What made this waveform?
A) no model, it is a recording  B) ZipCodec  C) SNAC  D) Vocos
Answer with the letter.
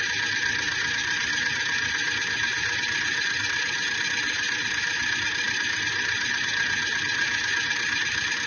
A